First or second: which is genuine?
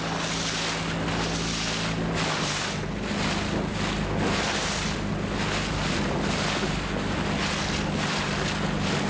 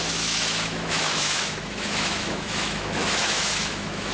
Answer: first